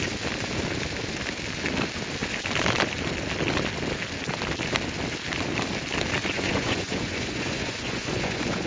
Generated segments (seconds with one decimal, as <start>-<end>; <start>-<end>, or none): 6.2-8.7